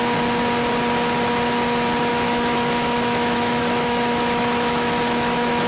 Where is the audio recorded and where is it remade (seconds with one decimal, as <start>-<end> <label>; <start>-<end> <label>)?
0.0-2.1 recorded; 2.1-5.7 remade